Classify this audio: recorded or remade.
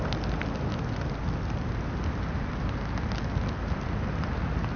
recorded